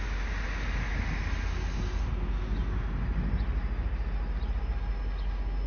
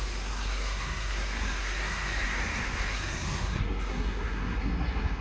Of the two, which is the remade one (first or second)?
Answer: second